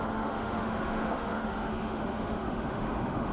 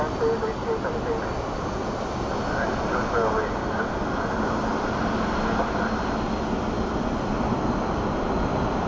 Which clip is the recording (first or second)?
second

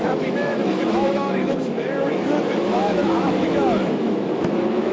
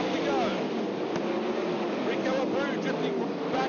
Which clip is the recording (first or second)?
second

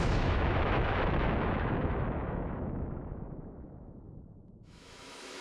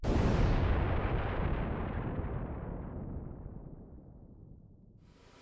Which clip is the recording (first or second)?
second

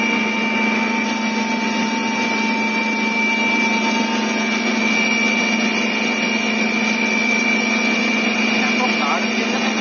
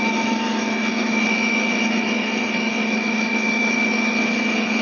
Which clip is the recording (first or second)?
first